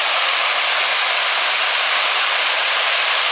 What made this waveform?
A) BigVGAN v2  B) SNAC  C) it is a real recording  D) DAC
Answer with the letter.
C